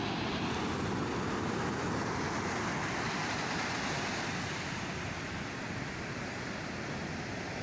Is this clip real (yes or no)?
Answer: yes